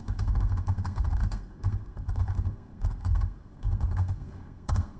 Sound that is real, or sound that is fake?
fake